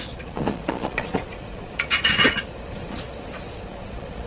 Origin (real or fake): fake